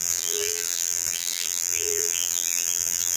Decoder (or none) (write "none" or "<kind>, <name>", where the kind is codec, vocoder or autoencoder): vocoder, BigVGAN v2